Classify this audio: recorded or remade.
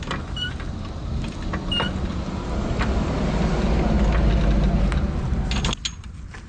recorded